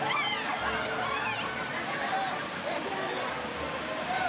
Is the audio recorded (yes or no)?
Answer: yes